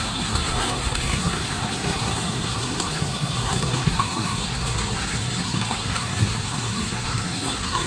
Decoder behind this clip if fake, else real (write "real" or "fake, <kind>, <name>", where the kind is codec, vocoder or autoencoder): fake, codec, SNAC